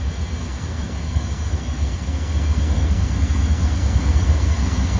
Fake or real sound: fake